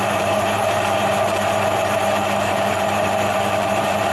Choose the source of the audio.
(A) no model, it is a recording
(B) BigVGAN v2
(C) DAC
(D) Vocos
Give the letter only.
B